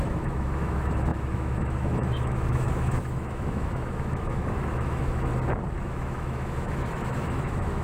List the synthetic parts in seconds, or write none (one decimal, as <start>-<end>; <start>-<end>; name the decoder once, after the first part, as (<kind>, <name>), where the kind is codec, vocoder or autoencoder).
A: 0.0-5.3 (autoencoder, DAC-VAE); 5.8-7.8